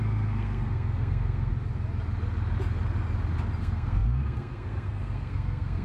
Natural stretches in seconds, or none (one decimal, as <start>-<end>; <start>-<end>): 1.5-3.6